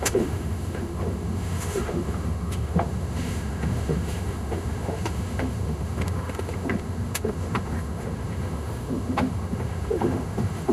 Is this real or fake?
fake